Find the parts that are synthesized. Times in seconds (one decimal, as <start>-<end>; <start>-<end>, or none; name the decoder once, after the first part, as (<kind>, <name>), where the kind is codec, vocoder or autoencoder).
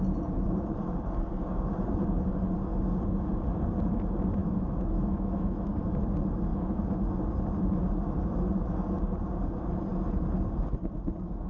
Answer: 4.4-5.7 (autoencoder, DAC-VAE)